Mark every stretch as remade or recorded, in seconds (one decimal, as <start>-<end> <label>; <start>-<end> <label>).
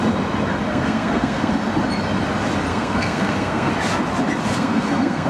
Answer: 0.0-0.7 recorded; 0.7-1.5 remade; 1.5-2.7 recorded; 2.7-3.7 remade; 3.7-4.5 recorded; 4.5-5.3 remade